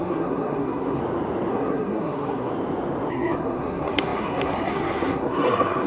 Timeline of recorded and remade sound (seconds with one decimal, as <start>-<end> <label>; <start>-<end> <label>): 0.0-1.0 remade; 1.0-1.5 recorded; 1.5-2.5 remade; 2.5-3.1 recorded; 3.1-5.9 remade